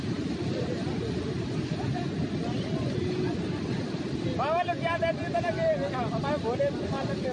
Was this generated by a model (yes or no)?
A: no